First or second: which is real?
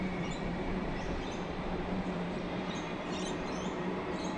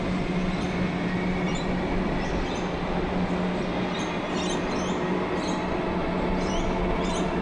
second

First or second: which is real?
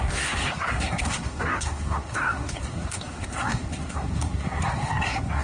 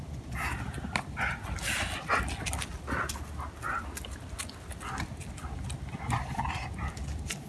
second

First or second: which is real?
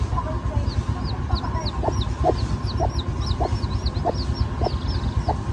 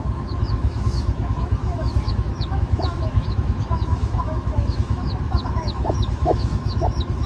first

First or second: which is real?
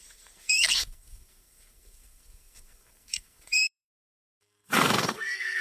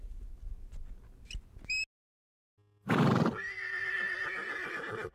second